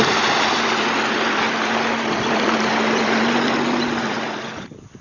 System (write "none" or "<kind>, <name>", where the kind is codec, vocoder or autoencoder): vocoder, BigVGAN v2